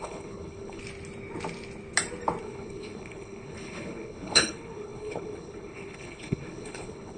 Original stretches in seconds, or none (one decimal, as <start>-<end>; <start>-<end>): 0.8-2.4